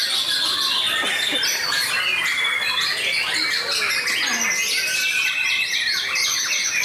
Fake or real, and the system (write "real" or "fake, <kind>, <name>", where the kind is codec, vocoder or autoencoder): real